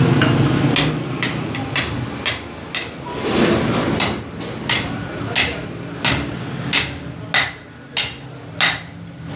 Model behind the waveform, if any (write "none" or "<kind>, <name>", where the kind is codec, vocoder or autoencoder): none